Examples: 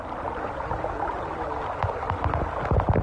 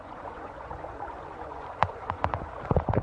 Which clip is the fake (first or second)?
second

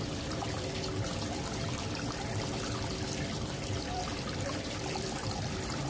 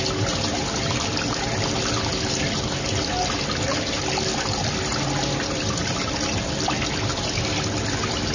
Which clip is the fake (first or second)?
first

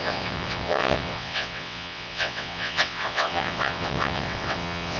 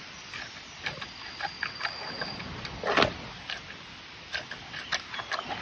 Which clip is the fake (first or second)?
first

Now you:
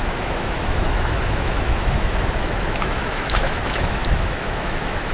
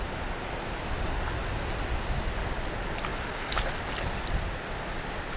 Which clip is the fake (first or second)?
first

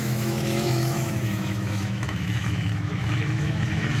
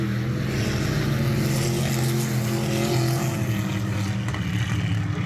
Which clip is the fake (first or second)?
first